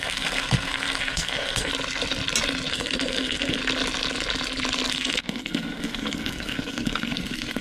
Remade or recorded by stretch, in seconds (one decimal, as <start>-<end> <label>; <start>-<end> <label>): 0.0-1.7 remade; 1.7-2.7 recorded; 2.7-3.6 remade; 3.6-4.9 recorded; 4.9-7.6 remade